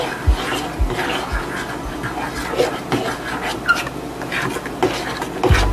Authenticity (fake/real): real